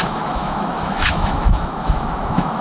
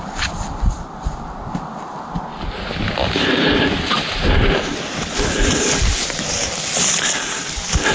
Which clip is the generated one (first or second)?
first